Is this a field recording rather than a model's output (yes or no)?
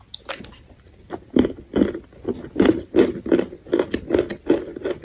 yes